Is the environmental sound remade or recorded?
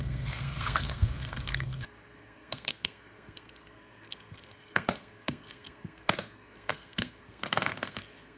remade